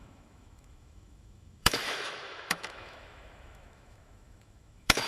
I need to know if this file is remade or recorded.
remade